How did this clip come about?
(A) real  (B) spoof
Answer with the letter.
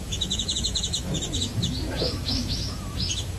B